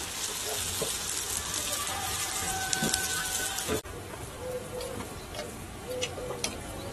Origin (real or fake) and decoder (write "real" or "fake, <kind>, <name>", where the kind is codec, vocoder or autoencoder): real